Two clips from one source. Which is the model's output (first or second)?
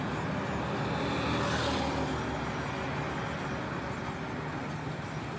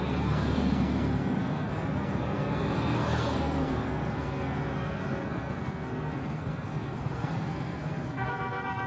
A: second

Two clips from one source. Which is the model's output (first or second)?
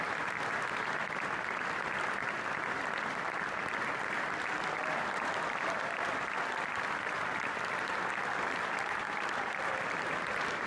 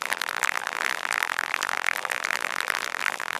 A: second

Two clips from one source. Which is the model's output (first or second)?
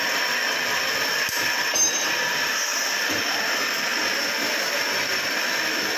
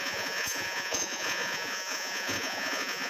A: second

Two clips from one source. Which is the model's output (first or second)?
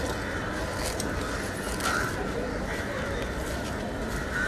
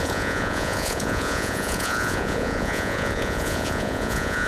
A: second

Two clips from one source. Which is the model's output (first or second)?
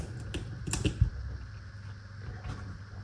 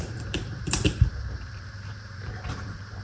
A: second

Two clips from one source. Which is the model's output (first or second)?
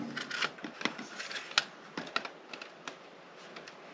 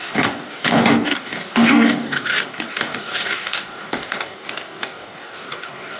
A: second